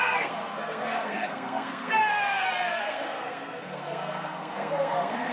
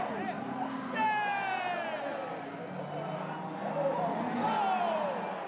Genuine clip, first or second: second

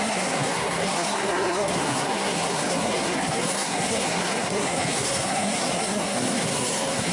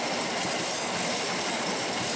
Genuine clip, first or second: second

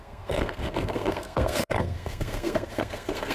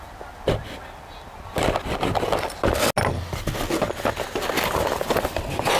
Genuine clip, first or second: second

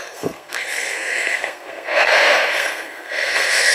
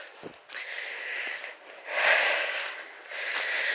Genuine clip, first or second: second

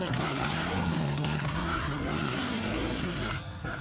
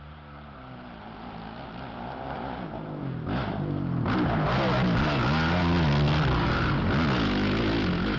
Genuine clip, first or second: second